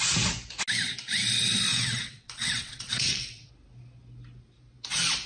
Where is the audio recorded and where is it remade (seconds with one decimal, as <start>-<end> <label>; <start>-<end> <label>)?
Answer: 0.0-1.7 recorded; 1.7-3.5 remade; 3.5-5.3 recorded